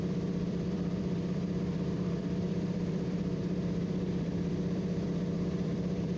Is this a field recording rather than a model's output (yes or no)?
no